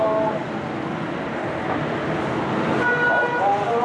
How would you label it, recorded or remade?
recorded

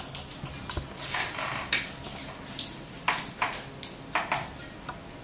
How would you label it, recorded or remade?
recorded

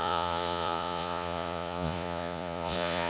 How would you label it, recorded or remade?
remade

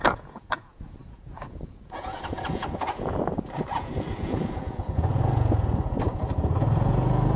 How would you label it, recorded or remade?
remade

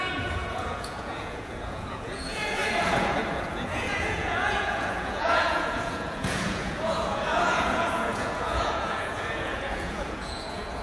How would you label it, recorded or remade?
remade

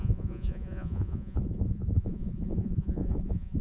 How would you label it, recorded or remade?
remade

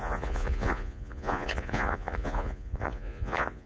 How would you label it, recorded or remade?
remade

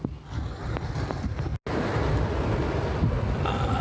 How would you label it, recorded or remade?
recorded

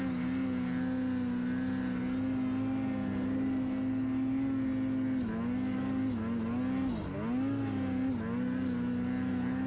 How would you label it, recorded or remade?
recorded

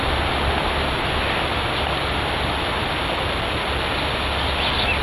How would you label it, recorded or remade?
recorded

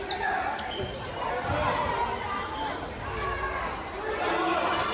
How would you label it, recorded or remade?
recorded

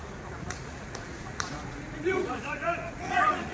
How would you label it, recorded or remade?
remade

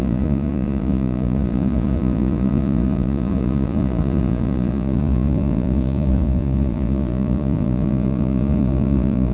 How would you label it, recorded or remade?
remade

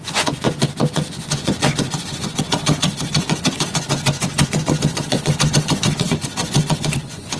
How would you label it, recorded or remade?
remade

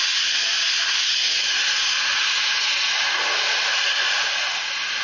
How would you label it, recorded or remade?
recorded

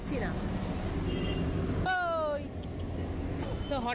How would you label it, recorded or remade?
recorded